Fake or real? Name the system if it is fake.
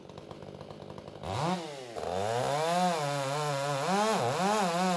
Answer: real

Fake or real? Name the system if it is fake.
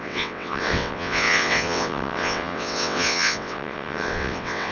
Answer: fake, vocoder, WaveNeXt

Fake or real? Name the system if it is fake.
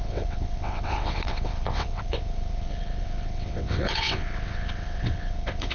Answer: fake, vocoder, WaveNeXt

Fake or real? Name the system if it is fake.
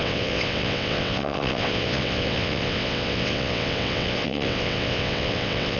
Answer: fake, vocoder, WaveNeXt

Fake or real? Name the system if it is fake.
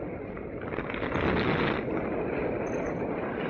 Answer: real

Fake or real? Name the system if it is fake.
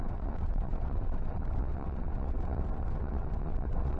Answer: fake, vocoder, WaveNeXt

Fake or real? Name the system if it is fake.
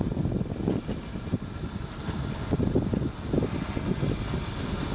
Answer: real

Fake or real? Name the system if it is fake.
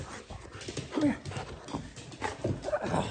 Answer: real